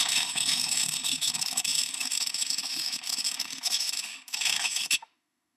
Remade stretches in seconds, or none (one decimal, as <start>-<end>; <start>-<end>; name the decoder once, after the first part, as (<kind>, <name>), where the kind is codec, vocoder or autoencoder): 0.0-5.6 (autoencoder, DAC-VAE)

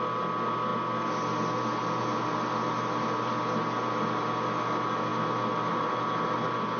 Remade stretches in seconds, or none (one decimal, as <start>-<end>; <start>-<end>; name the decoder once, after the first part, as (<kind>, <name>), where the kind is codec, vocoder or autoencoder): none

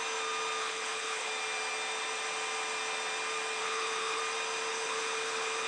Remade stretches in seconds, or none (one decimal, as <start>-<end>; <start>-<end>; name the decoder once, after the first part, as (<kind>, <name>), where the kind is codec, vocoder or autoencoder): 0.6-1.3 (codec, HILCodec); 3.6-4.2; 4.7-5.7

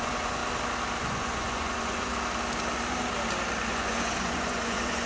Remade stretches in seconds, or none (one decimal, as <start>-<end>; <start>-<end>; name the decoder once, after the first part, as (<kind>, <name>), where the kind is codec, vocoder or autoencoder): 0.0-0.4 (vocoder, Vocos); 1.0-2.1; 3.7-5.1

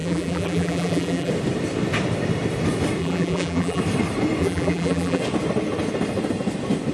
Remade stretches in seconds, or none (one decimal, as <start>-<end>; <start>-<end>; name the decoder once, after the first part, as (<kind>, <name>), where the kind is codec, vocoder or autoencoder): 0.0-1.3 (vocoder, BigVGAN v2); 3.0-3.8; 4.4-5.2

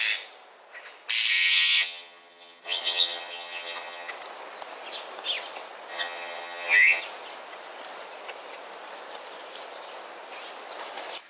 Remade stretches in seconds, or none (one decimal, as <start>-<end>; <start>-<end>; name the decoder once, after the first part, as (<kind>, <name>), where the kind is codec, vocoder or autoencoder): 1.3-4.1 (vocoder, HiFi-GAN); 5.9-7.0

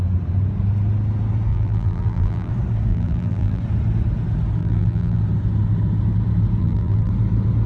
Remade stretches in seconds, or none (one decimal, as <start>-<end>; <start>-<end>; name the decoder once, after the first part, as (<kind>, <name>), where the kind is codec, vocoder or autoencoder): 1.5-2.5 (vocoder, BigVGAN v2); 2.9-3.6; 4.6-5.2; 6.6-7.1

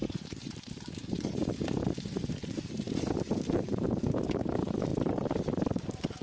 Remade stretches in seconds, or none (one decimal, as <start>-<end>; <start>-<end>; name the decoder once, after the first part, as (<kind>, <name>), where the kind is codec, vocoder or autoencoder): 0.0-6.2 (vocoder, BigVGAN v2)